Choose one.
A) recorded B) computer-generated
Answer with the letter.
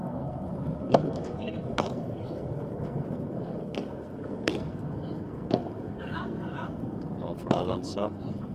B